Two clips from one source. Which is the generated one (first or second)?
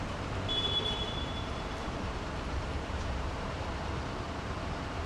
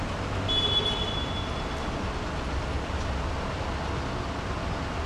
first